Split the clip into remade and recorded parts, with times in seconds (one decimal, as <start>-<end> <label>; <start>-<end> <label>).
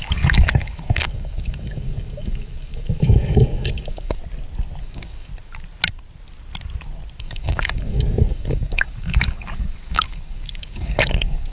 0.0-4.2 remade; 4.2-4.8 recorded; 4.8-5.3 remade; 5.3-7.2 recorded; 7.2-11.5 remade